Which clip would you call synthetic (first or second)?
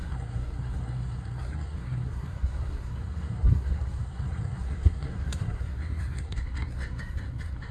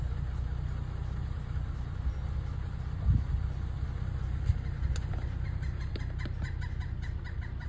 first